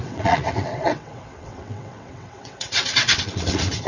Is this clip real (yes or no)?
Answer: no